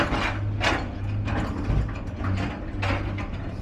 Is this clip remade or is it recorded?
recorded